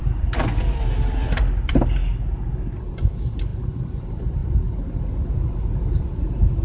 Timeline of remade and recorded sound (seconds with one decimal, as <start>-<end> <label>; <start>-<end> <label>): 0.0-2.0 remade; 2.0-2.9 recorded; 2.9-3.5 remade; 3.5-4.0 recorded; 4.0-6.6 remade